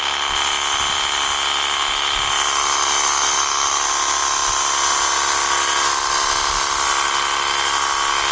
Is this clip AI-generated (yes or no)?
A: no